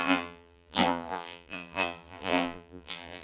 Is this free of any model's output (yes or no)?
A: no